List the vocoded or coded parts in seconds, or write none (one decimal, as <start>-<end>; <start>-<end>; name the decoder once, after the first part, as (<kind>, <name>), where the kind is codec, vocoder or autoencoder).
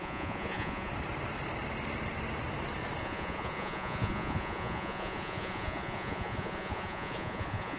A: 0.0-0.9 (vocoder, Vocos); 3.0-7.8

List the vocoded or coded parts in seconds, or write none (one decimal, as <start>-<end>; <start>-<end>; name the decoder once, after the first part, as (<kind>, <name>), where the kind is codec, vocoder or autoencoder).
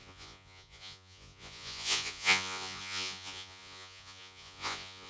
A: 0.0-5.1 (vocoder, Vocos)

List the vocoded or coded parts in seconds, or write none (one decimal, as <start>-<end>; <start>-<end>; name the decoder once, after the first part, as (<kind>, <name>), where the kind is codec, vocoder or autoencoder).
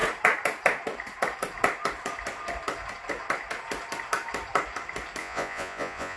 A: 5.2-6.2 (vocoder, Vocos)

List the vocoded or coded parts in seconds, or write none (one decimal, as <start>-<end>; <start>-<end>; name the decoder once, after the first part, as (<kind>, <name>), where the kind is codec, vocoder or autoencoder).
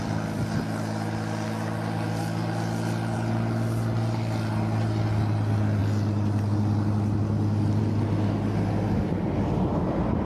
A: none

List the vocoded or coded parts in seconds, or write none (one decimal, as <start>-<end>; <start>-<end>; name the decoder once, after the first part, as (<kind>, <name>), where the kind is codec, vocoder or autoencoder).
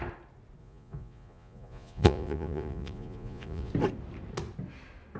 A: 0.6-3.7 (vocoder, Vocos)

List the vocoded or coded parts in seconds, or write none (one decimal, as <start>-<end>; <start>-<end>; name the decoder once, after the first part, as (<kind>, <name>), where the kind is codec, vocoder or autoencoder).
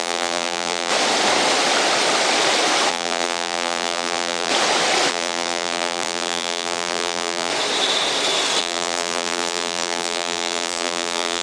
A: 0.0-0.9 (vocoder, BigVGAN v2); 2.9-4.5; 5.1-7.5; 8.6-11.4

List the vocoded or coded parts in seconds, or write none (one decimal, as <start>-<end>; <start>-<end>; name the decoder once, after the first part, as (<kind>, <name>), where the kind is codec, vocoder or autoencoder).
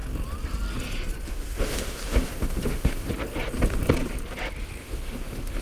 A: 1.3-3.1 (autoencoder, DAC-VAE); 4.8-5.6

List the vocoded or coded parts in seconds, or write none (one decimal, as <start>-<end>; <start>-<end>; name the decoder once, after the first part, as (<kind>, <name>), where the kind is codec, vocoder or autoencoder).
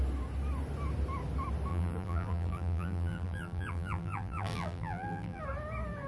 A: 1.7-5.4 (vocoder, BigVGAN v2)